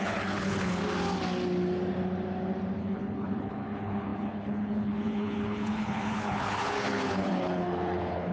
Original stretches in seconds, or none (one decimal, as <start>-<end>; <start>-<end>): 0.8-2.8

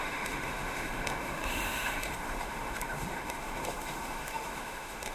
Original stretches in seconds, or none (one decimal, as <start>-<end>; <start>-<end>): none

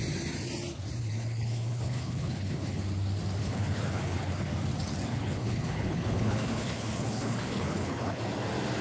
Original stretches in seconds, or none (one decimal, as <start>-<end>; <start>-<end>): 0.0-1.0; 2.8-3.4; 4.5-5.1; 8.2-8.8

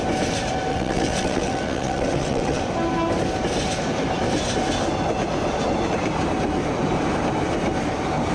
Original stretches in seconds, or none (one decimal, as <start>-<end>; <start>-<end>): 0.0-0.7; 2.6-8.3

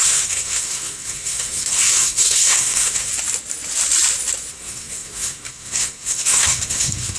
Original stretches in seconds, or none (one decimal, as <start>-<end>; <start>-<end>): 3.1-4.5

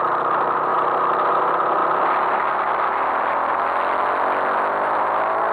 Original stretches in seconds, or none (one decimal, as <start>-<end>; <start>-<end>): 0.0-5.5